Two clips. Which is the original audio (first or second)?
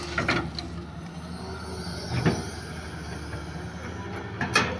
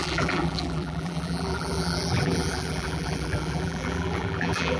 first